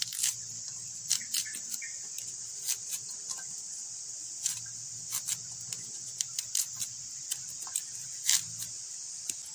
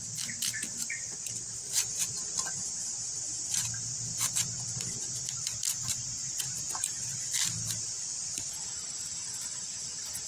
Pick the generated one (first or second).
second